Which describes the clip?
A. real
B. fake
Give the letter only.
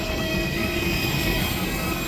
B